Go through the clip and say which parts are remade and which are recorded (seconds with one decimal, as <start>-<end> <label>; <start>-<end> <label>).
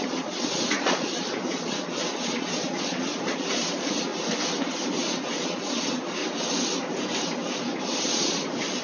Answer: 0.0-4.1 remade; 4.1-4.9 recorded; 4.9-6.2 remade; 6.2-8.0 recorded; 8.0-8.8 remade